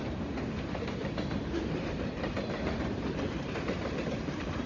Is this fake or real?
fake